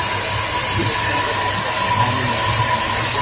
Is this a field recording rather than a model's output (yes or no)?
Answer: yes